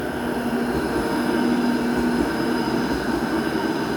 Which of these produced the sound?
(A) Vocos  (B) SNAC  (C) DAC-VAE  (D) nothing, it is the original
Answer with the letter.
D